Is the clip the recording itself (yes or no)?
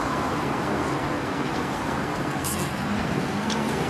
no